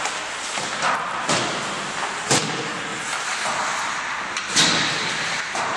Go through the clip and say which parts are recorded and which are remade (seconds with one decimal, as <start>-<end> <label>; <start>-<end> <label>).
0.0-2.9 recorded; 2.9-4.5 remade; 4.5-5.8 recorded